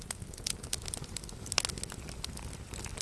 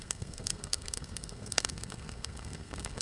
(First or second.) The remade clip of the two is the second